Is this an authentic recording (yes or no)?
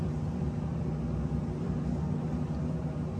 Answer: yes